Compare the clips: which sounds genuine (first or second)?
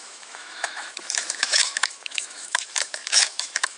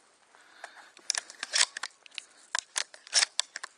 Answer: second